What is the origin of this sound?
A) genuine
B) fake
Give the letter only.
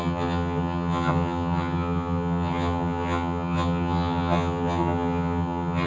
B